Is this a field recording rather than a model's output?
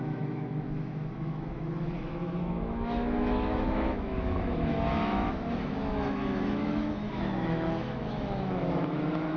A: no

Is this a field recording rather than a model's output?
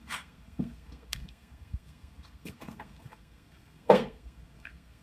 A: no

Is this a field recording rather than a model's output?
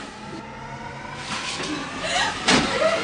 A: yes